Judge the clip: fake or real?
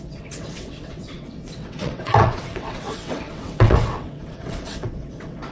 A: fake